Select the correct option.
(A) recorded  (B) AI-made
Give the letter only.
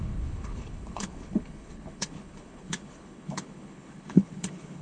B